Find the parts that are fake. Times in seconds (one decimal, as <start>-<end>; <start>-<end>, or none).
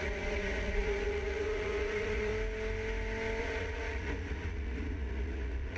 0.0-2.3; 3.4-5.8